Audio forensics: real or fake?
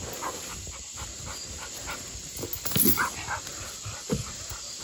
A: real